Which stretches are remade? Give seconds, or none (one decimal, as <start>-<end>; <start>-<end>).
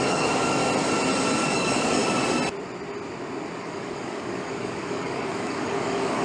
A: 0.0-0.6; 1.4-2.0; 3.6-6.2